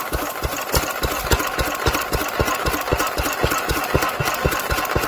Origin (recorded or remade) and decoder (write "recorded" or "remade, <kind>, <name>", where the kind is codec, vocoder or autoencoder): recorded